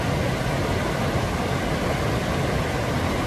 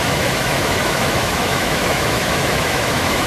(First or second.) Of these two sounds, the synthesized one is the second